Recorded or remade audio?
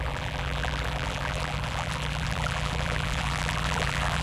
remade